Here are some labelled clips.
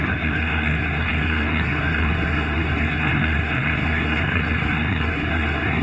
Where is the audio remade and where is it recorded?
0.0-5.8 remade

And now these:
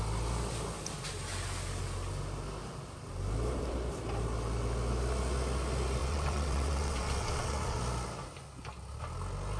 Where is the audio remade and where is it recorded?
0.0-6.0 recorded; 6.0-7.8 remade; 7.8-9.6 recorded

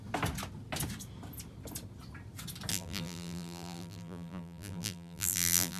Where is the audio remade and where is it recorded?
0.0-2.7 recorded; 2.7-5.8 remade

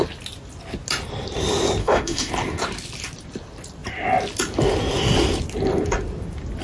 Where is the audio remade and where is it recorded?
0.0-1.8 recorded; 1.8-2.3 remade; 2.3-6.6 recorded

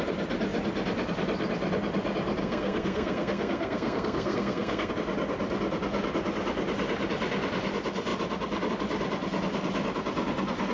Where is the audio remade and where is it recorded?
0.0-2.4 recorded; 2.4-4.9 remade; 4.9-10.7 recorded

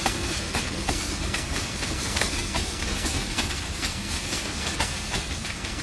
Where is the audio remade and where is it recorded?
0.0-5.8 remade